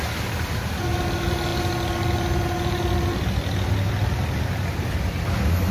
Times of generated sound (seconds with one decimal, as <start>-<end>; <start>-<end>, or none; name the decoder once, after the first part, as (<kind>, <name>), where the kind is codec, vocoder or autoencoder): none